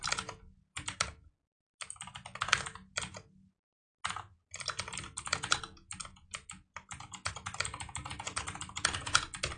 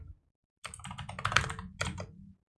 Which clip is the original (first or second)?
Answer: first